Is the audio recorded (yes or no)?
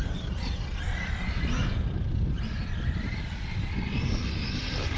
yes